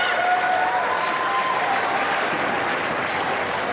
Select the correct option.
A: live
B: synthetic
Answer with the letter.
A